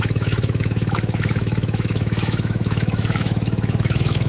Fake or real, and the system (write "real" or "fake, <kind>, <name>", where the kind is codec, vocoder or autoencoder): fake, autoencoder, DAC-VAE